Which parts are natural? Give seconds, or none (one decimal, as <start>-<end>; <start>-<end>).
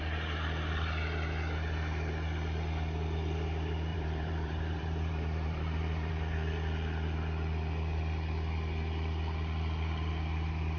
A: 0.0-3.9; 6.1-10.8